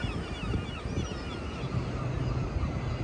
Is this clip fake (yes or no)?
no